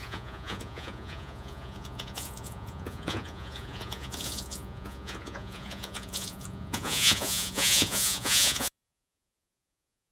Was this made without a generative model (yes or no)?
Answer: no